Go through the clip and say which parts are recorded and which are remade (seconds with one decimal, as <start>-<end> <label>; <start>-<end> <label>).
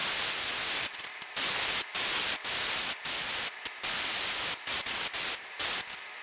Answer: 0.0-6.2 recorded